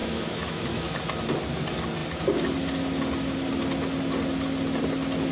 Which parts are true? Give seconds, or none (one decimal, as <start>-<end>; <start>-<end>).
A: 1.0-5.3